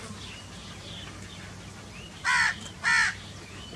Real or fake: real